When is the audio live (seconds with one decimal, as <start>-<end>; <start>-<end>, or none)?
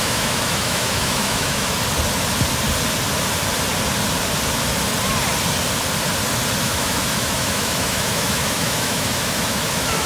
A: 1.8-6.6